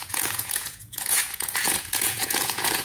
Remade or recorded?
remade